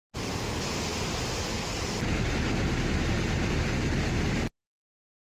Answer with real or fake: real